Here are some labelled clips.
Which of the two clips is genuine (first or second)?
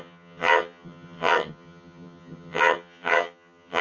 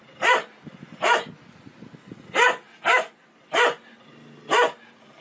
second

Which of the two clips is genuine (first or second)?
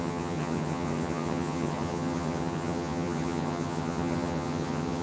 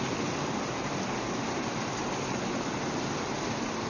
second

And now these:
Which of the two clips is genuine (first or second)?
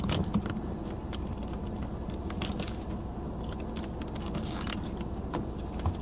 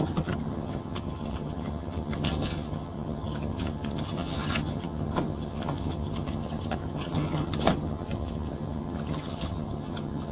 first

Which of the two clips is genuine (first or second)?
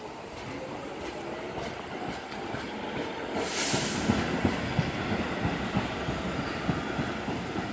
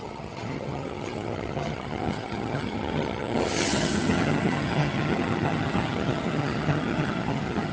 first